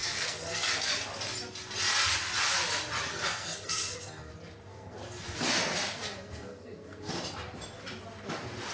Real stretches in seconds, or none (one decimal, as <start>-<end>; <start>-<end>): 0.9-3.1; 4.3-4.7; 5.5-5.9; 7.1-8.7